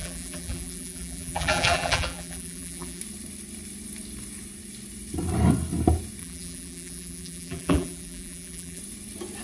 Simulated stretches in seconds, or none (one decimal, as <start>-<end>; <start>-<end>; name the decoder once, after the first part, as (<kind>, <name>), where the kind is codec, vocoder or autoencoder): 0.0-3.0 (vocoder, BigVGAN v2); 6.2-8.8